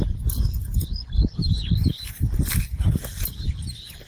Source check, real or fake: real